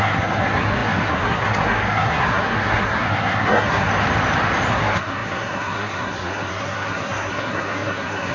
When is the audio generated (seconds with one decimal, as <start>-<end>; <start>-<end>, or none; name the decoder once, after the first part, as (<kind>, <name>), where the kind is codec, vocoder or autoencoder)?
0.0-3.9 (codec, SNAC); 4.7-8.3